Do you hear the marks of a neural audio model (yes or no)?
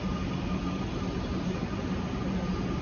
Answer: no